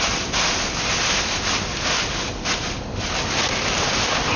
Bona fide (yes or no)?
yes